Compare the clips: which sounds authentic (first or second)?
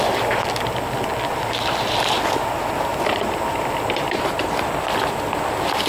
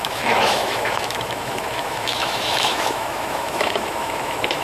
first